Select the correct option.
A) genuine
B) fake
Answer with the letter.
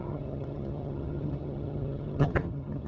B